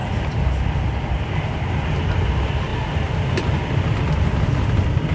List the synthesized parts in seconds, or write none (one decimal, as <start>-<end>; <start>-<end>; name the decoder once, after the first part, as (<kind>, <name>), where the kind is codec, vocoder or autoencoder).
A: 0.0-2.7 (vocoder, BigVGAN v2); 3.3-5.1